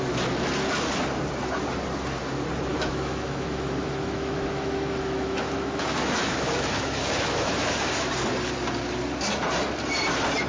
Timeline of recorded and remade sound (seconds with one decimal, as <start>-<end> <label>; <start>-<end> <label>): 0.0-2.7 recorded; 2.7-7.9 remade; 7.9-10.5 recorded